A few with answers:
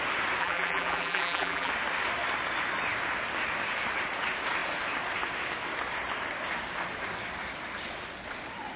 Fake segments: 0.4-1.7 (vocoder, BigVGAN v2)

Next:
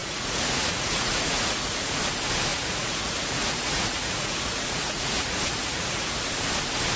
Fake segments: 0.0-2.0 (vocoder, Vocos); 2.5-6.2

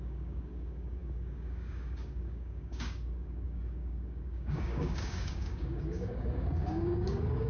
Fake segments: 0.0-7.5 (codec, DAC)

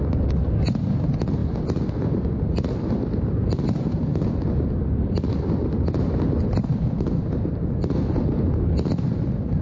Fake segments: none

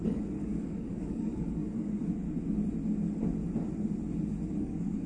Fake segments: 0.0-2.0 (codec, DAC); 4.5-5.1